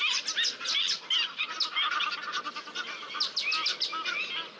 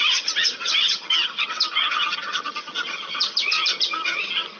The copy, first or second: second